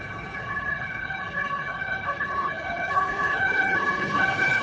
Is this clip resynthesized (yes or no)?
yes